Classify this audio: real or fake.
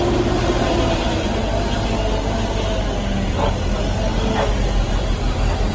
real